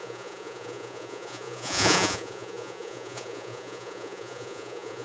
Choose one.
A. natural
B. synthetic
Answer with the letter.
B